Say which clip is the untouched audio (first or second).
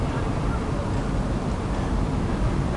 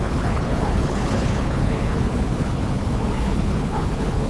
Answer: first